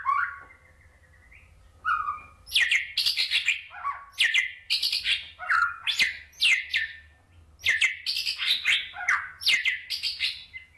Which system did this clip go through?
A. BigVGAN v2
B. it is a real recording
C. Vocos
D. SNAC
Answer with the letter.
B